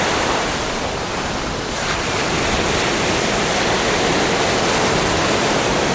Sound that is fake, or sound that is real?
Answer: real